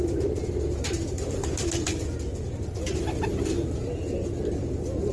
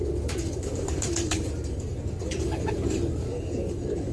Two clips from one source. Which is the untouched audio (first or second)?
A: first